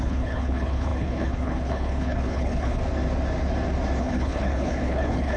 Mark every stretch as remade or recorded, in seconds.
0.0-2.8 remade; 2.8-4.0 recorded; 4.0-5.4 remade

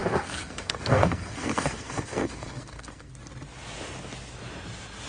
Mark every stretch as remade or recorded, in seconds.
0.0-3.1 remade; 3.1-5.1 recorded

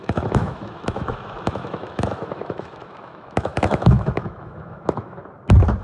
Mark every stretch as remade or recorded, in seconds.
0.0-5.2 remade; 5.2-5.8 recorded